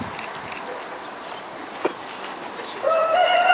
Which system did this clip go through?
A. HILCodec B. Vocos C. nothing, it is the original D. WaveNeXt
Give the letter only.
C